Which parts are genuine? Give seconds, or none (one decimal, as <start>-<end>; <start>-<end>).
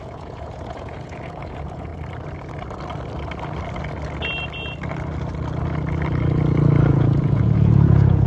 1.9-6.9